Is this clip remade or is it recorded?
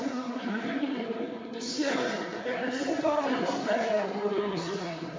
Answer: remade